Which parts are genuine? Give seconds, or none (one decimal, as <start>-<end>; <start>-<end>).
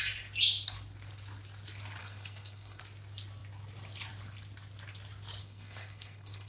0.0-2.0; 2.8-5.4